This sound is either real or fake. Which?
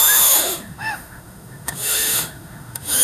fake